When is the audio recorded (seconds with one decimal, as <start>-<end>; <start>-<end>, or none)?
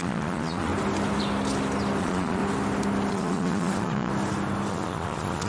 0.7-2.0; 2.4-3.1; 4.1-4.7